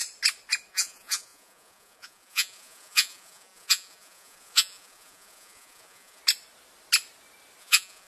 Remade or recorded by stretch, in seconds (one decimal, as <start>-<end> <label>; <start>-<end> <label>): 0.0-0.7 recorded; 0.7-6.2 remade; 6.2-7.6 recorded; 7.6-8.1 remade